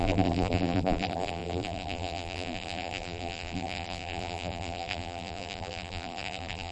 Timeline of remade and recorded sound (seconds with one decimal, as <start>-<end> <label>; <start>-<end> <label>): 0.0-6.7 remade